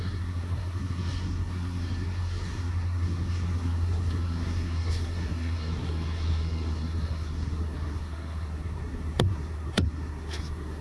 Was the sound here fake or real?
fake